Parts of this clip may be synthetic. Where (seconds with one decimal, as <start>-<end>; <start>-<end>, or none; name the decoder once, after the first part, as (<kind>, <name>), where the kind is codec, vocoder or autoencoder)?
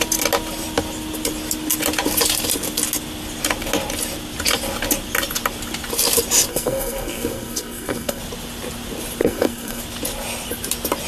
6.5-8.2 (codec, SNAC); 9.2-9.8